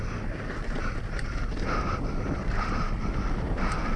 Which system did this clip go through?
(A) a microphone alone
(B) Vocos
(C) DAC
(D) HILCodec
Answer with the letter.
A